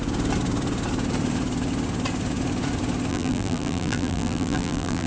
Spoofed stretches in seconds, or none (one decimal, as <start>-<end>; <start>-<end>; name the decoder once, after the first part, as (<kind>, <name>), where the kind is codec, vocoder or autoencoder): 3.1-5.1 (vocoder, BigVGAN v2)